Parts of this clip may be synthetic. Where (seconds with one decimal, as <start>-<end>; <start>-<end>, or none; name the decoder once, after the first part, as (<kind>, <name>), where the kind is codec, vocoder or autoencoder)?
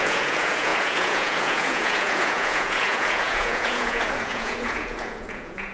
0.0-5.7 (vocoder, Vocos)